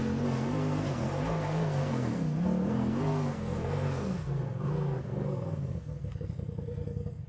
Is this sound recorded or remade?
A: remade